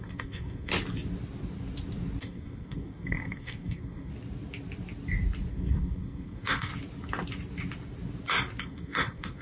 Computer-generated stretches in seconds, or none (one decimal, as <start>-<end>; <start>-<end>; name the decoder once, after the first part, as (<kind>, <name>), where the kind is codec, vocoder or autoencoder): 0.0-0.7 (codec, SNAC); 2.2-4.1; 5.5-6.7; 8.6-9.4